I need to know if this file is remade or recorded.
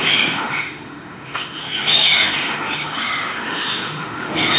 remade